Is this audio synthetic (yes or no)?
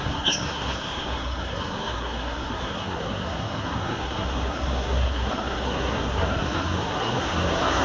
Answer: yes